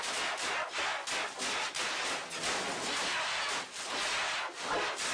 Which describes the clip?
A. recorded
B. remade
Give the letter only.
A